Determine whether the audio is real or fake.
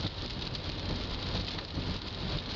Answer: real